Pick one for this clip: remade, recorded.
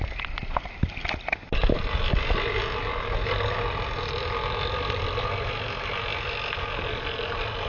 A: recorded